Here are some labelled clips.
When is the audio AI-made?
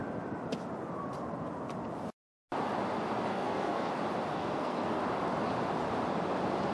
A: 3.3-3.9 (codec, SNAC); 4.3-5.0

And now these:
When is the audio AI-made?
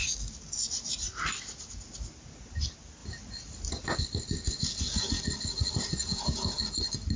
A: 6.0-6.6 (vocoder, Vocos)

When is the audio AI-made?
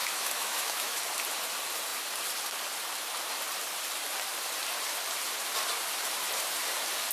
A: 0.0-1.0 (autoencoder, DAC-VAE)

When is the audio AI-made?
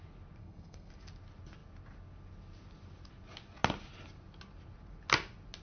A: 0.4-0.9 (codec, SNAC)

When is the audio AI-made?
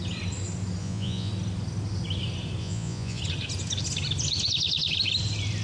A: 0.8-1.3 (vocoder, Vocos); 2.6-3.2